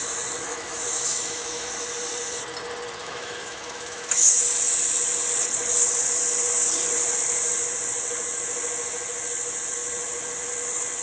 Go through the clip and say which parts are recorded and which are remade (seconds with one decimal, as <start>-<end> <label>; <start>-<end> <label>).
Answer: 0.0-0.5 recorded; 0.5-1.7 remade; 1.7-3.0 recorded; 3.0-4.5 remade; 4.5-11.0 recorded